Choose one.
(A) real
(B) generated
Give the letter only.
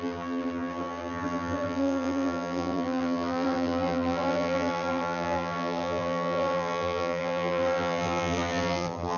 B